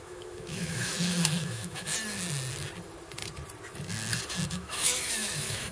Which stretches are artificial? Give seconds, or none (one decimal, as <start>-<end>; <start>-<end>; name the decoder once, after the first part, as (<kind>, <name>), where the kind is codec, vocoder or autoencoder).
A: 0.0-1.9 (autoencoder, DAC-VAE); 4.5-5.7